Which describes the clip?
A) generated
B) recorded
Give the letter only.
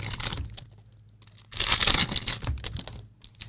B